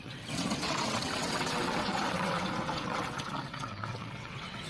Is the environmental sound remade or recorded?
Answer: remade